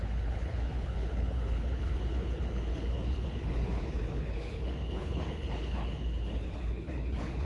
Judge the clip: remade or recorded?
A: remade